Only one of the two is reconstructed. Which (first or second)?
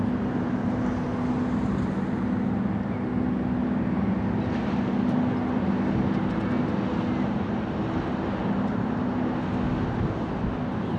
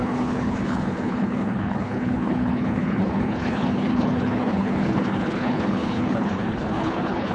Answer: second